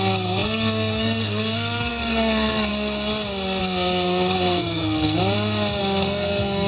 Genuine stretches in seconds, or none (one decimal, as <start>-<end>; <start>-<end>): 2.7-3.6; 5.2-5.8